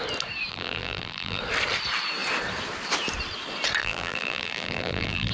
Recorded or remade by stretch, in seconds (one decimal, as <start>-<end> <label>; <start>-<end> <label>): 0.0-0.5 recorded; 0.5-1.4 remade; 1.4-3.8 recorded; 3.8-5.3 remade